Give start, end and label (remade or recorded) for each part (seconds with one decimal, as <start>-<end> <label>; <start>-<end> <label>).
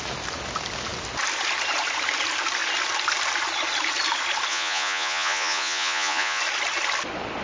0.0-4.5 recorded; 4.5-6.4 remade; 6.4-7.4 recorded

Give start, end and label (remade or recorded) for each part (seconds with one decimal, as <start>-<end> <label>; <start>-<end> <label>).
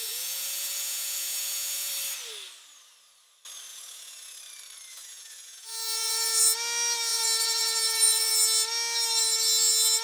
0.0-1.9 remade; 1.9-3.7 recorded; 3.7-4.4 remade; 4.4-4.9 recorded; 4.9-6.4 remade; 6.4-7.1 recorded; 7.1-8.3 remade; 8.3-10.0 recorded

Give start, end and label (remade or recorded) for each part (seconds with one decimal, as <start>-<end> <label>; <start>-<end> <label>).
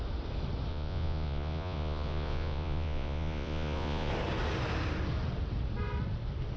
0.0-0.7 recorded; 0.7-4.1 remade; 4.1-6.6 recorded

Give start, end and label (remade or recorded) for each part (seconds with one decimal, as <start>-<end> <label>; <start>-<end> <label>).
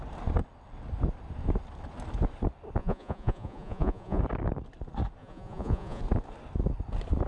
0.0-2.8 recorded; 2.8-4.2 remade; 4.2-5.2 recorded; 5.2-6.0 remade; 6.0-7.3 recorded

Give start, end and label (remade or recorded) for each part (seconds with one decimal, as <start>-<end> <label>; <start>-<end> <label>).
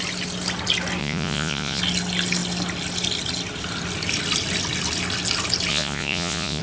0.0-1.0 recorded; 1.0-1.8 remade; 1.8-5.7 recorded; 5.7-6.6 remade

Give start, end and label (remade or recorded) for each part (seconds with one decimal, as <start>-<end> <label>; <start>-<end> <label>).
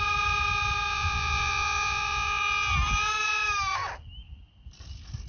0.0-0.9 recorded; 0.9-2.4 remade; 2.4-5.3 recorded